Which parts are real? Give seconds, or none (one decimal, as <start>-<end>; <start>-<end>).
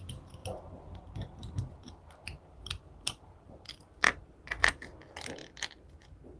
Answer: 0.0-0.4; 4.2-6.4